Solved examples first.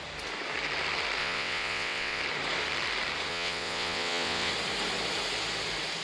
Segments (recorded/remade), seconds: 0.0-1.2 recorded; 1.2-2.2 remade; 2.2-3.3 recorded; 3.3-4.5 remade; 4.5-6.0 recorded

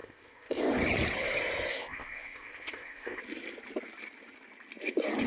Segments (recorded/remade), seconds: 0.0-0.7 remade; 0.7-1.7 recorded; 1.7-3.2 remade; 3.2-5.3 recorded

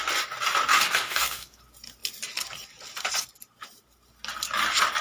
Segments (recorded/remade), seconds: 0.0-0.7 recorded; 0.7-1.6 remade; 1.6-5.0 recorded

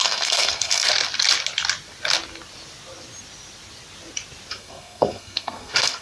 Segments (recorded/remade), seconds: 0.0-0.9 remade; 0.9-4.5 recorded; 4.5-6.0 remade